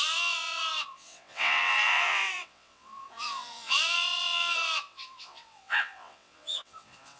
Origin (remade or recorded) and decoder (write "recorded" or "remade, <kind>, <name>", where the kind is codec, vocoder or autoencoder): remade, vocoder, WaveNeXt